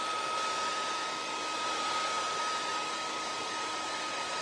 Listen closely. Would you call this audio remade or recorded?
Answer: remade